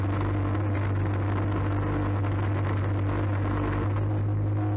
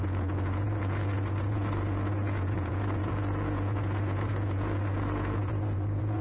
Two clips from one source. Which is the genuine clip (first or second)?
first